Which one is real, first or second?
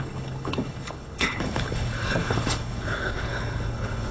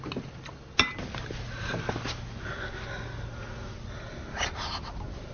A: second